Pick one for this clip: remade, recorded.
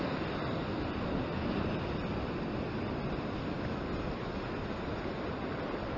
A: recorded